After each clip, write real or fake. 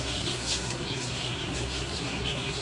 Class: fake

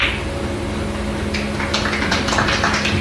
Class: real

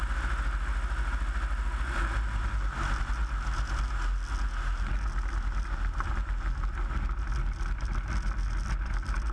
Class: real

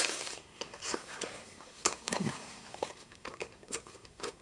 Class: fake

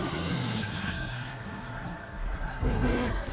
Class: fake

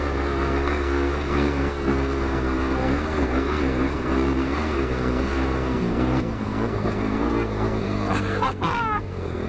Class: fake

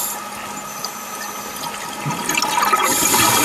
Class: real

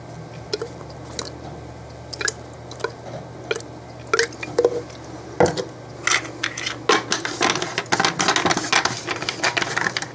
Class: real